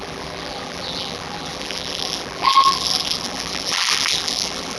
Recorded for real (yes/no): no